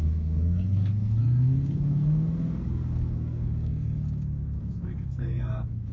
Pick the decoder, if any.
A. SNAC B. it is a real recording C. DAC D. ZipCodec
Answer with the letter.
A